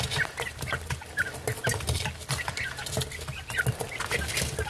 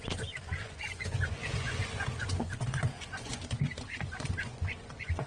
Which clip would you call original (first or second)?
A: first